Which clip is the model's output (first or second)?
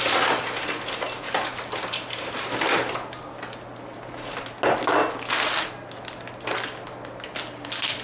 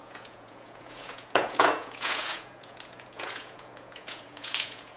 second